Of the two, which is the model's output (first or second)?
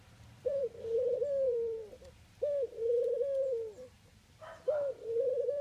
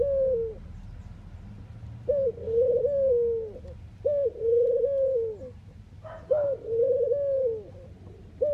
first